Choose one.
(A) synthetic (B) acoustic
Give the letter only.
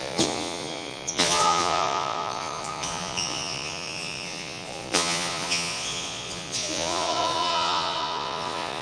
A